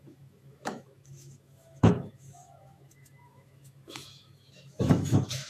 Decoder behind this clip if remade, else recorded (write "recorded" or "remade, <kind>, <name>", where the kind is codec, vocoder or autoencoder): remade, autoencoder, DAC-VAE